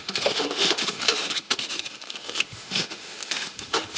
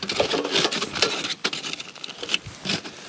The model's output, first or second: first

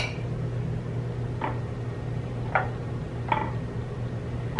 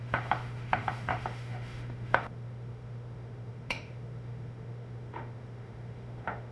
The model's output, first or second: second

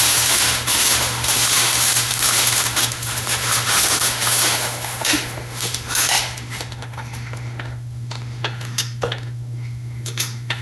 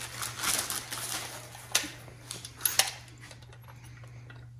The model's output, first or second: first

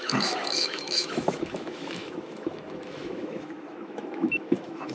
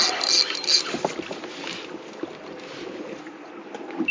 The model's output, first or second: first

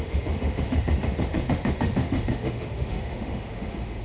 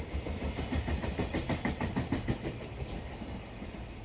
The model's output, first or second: first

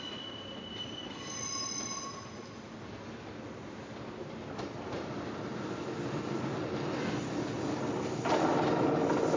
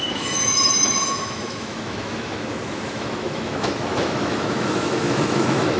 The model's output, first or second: second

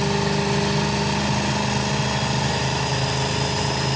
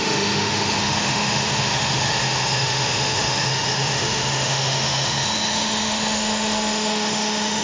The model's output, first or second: second